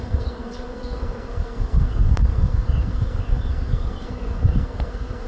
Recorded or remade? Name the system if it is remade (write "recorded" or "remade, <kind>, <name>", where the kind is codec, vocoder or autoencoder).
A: remade, codec, SNAC